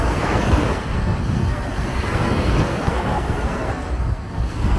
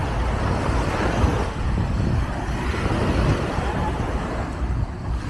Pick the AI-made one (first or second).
first